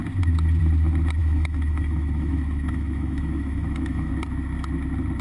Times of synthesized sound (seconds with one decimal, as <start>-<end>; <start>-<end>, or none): 1.2-4.1